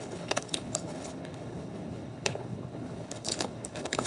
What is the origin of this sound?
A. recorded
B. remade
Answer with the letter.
B